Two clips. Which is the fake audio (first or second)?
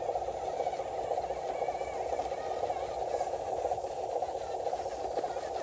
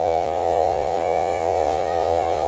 second